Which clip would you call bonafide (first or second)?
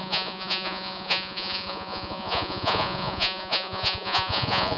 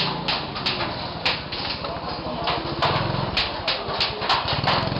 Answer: second